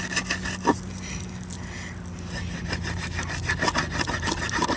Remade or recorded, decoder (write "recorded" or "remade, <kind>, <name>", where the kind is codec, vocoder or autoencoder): recorded